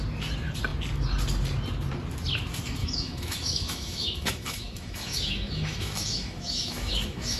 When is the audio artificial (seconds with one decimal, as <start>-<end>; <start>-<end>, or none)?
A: 2.8-7.4